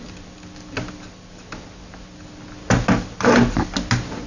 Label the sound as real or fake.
real